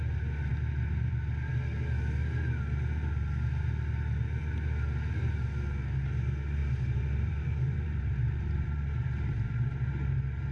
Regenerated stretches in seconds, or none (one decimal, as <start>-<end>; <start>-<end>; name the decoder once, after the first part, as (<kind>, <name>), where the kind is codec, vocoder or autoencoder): 6.6-9.9 (vocoder, BigVGAN v2)